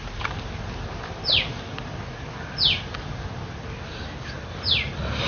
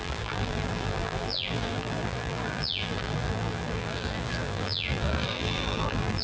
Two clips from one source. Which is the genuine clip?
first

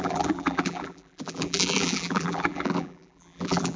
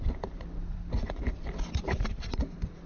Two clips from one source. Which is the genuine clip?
second